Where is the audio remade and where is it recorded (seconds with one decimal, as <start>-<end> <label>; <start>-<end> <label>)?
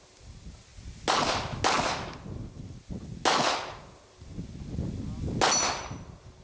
0.0-6.4 recorded